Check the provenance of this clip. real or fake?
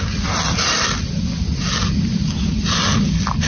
real